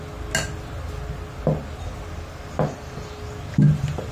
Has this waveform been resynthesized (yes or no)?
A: no